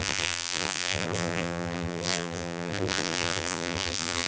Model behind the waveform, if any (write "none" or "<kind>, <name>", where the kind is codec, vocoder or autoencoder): vocoder, BigVGAN v2